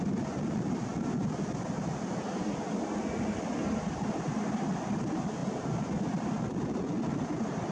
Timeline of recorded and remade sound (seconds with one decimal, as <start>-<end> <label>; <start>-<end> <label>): 0.0-7.7 recorded